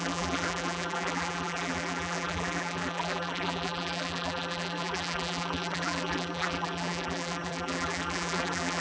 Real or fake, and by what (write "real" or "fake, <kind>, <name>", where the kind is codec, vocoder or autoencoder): fake, vocoder, BigVGAN v2